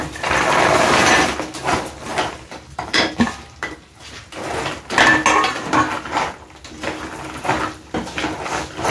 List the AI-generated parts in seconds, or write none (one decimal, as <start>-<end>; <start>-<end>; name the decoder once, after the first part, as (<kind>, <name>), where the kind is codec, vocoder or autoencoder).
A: 2.1-4.2 (vocoder, BigVGAN v2)